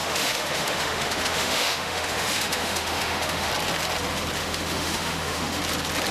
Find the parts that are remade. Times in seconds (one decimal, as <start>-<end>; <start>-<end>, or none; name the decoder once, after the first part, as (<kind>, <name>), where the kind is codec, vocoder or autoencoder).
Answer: 0.0-3.5 (autoencoder, DAC-VAE); 4.4-5.6